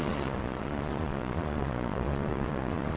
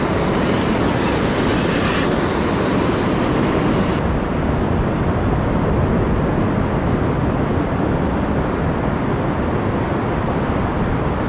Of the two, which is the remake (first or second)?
first